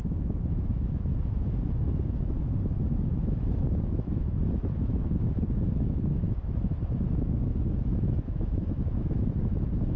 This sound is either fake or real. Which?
fake